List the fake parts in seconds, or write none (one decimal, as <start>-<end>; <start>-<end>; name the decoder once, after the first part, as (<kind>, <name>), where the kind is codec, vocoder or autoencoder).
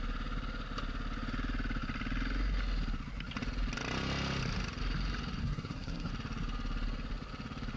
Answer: 5.4-6.1 (codec, SNAC)